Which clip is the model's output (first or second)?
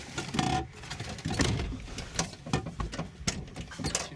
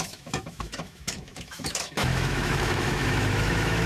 second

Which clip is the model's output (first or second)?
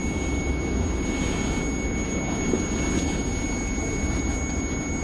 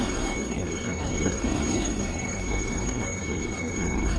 second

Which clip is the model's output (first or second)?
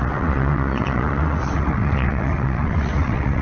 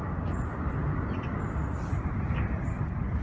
first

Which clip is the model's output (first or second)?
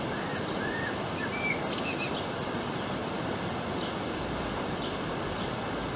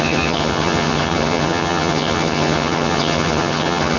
second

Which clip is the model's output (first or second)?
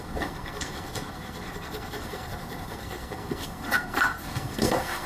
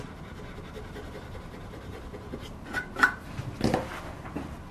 first